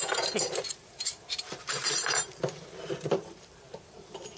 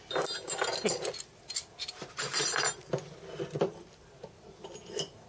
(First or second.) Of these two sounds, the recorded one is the second